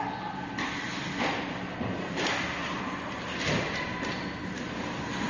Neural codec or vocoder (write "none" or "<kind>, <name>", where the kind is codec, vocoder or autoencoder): none